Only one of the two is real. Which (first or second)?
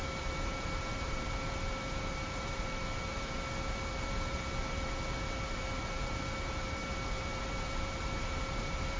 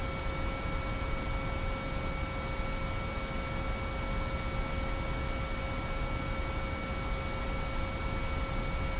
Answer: second